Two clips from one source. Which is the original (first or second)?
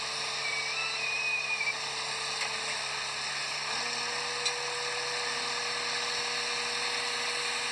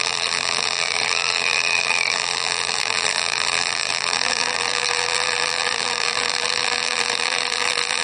first